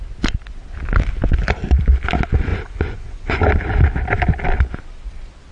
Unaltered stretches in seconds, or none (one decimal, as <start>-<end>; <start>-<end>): 0.0-2.5; 3.4-5.5